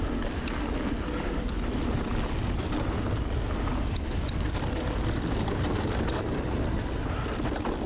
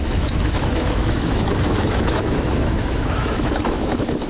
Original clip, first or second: first